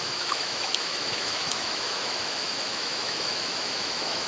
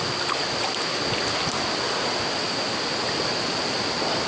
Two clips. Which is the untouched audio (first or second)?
second